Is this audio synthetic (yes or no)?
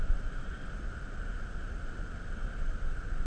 no